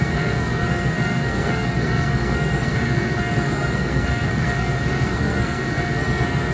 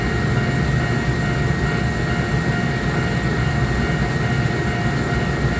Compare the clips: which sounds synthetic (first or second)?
first